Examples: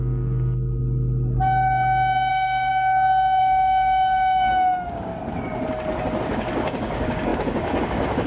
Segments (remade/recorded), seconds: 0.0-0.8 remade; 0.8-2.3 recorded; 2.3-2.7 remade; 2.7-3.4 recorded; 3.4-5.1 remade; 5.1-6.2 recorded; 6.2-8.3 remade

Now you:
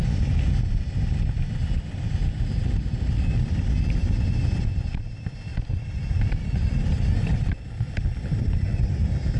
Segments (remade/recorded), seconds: 0.0-9.4 recorded